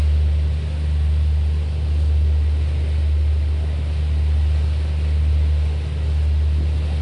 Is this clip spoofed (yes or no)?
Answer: no